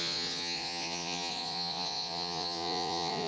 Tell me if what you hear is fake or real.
fake